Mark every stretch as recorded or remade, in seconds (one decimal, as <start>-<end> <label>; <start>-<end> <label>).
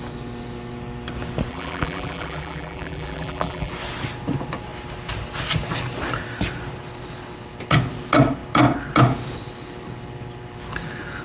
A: 0.0-1.5 recorded; 1.5-3.7 remade; 3.7-11.2 recorded